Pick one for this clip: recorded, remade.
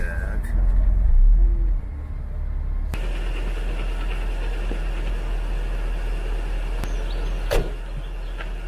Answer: recorded